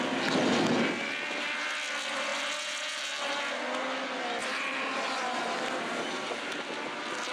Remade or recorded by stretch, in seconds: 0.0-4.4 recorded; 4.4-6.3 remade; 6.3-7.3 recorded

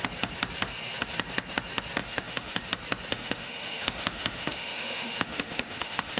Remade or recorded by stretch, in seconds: 0.0-2.0 recorded; 2.0-2.7 remade; 2.7-3.1 recorded; 3.1-6.2 remade

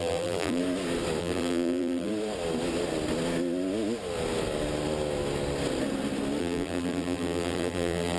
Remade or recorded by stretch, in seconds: 0.0-0.6 remade; 0.6-1.2 recorded; 1.2-2.1 remade; 2.1-6.4 recorded; 6.4-8.2 remade

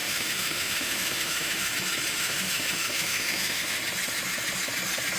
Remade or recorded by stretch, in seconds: 0.0-1.7 remade; 1.7-2.1 recorded; 2.1-3.8 remade; 3.8-5.2 recorded

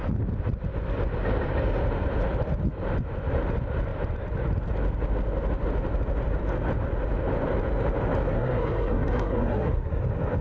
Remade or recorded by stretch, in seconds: 0.0-8.3 recorded; 8.3-10.0 remade; 10.0-10.4 recorded